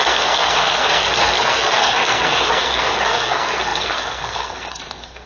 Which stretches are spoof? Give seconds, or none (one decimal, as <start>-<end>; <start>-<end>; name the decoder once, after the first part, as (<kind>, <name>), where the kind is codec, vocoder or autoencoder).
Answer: 0.0-5.3 (codec, SNAC)